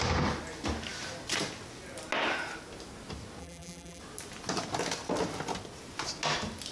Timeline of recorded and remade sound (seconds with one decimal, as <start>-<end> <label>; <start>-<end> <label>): 0.0-3.4 recorded; 3.4-4.0 remade; 4.0-6.7 recorded